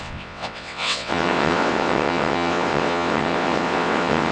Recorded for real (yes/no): no